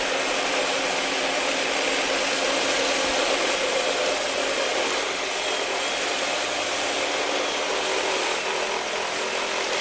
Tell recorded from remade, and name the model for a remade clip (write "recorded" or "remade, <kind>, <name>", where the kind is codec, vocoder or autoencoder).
recorded